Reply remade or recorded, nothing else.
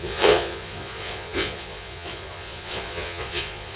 remade